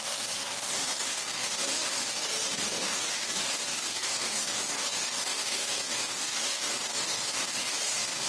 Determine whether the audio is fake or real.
fake